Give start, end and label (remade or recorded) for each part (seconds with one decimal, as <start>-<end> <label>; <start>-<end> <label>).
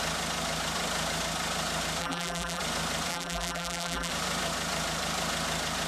0.0-2.0 recorded; 2.0-2.6 remade; 2.6-3.1 recorded; 3.1-4.1 remade; 4.1-5.9 recorded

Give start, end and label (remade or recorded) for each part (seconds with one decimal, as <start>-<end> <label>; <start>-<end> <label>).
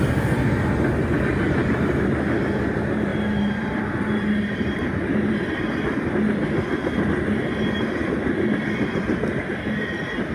0.0-1.6 recorded; 1.6-2.4 remade; 2.4-10.3 recorded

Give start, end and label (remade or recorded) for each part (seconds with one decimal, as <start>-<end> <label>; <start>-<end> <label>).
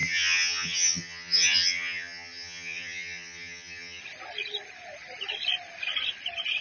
0.0-4.0 remade; 4.0-6.6 recorded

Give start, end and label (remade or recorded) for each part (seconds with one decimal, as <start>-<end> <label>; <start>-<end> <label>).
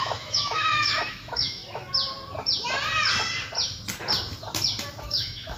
0.0-1.6 remade; 1.6-5.0 recorded; 5.0-5.6 remade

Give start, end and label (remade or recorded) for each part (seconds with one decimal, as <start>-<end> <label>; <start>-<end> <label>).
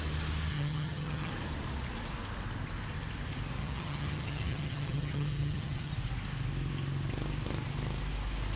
0.0-0.5 recorded; 0.5-1.3 remade; 1.3-3.6 recorded; 3.6-5.9 remade; 5.9-8.6 recorded